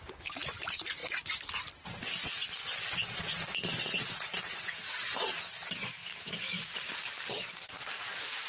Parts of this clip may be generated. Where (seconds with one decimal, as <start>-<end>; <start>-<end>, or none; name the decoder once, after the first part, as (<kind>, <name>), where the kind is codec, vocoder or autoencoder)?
3.8-4.6 (vocoder, WaveNeXt)